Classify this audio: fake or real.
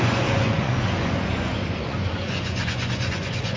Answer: fake